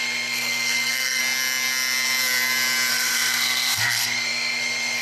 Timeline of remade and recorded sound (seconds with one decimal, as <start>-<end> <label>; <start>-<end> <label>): 0.0-1.2 remade; 1.2-2.9 recorded; 2.9-5.0 remade